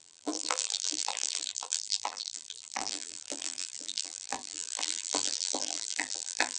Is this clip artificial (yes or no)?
yes